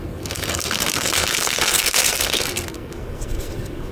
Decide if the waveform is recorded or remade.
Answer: remade